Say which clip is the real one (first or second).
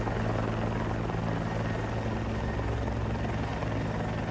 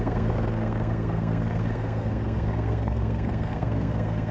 first